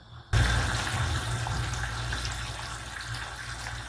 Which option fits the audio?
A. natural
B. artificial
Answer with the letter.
A